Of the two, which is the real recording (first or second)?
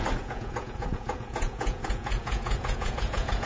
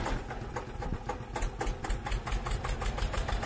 second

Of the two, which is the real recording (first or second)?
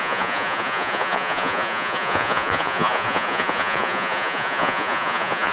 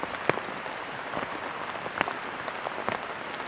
second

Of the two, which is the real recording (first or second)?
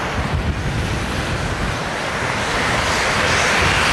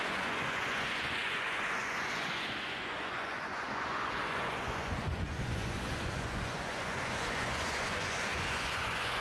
first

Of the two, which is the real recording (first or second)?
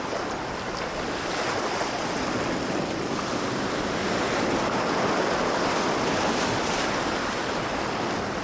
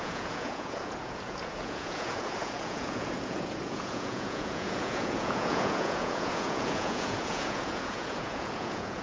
first